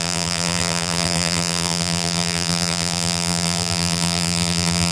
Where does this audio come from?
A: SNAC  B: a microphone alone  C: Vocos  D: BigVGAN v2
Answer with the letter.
D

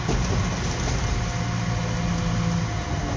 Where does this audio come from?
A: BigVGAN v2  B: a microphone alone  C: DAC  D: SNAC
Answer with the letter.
B